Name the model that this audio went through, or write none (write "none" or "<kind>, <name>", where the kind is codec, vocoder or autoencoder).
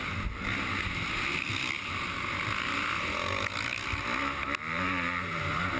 none